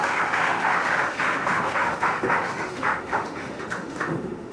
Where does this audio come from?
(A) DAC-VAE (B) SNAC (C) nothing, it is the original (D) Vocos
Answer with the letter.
A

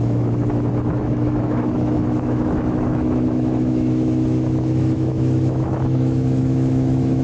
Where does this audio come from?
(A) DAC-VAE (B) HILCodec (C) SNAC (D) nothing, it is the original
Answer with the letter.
A